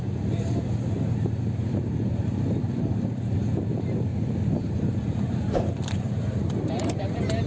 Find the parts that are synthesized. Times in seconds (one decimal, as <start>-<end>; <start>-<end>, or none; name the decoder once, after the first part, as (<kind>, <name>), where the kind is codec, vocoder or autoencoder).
0.0-4.1 (vocoder, BigVGAN v2); 4.7-7.5